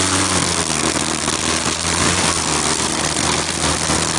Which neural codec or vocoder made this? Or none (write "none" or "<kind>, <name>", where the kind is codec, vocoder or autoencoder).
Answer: none